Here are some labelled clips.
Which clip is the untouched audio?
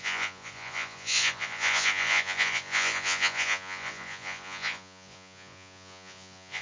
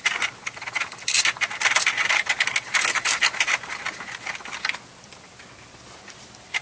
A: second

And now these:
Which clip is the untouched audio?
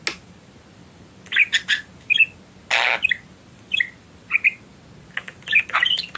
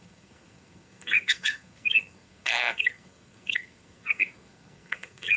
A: first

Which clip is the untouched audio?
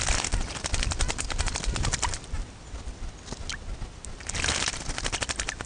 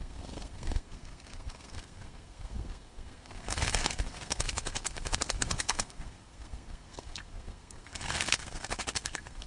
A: first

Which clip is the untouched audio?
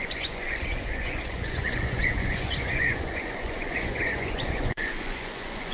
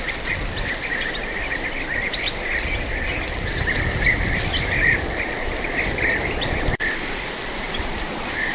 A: second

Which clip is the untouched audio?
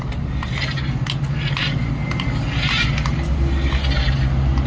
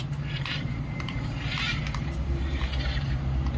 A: first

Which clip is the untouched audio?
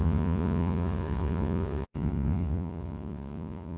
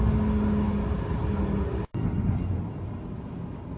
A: second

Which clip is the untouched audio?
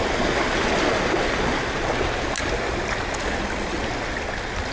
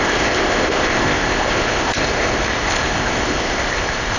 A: first